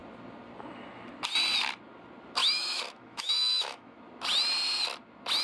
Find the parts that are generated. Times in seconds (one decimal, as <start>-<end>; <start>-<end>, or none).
2.4-4.0

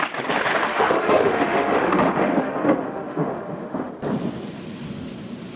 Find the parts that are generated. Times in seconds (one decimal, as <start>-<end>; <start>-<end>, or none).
0.7-3.9

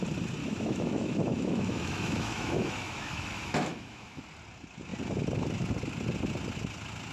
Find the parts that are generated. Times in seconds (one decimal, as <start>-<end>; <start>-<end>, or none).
0.4-4.2

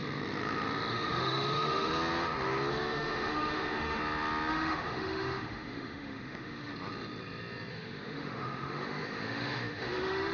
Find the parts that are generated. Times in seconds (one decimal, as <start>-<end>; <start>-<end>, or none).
0.9-1.9; 2.7-4.0; 4.5-6.7; 7.7-10.3

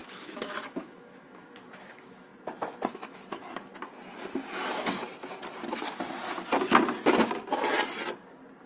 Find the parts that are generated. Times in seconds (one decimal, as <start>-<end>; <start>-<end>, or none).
0.0-2.3; 2.9-3.7

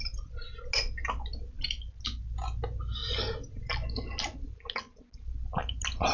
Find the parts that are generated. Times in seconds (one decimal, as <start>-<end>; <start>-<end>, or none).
none

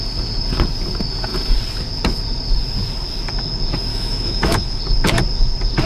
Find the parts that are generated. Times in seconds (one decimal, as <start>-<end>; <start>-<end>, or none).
3.9-4.8

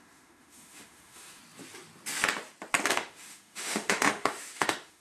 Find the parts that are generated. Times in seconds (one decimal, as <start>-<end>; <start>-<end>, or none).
0.0-1.4; 2.8-5.0